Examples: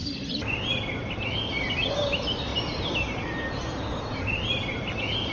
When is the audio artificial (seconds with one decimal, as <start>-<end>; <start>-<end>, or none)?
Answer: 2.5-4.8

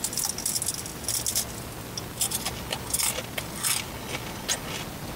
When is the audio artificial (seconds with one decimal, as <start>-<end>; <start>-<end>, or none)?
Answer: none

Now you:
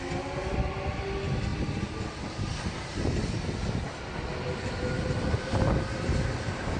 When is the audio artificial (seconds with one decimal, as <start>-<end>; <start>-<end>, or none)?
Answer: none